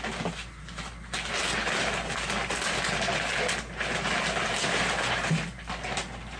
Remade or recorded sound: recorded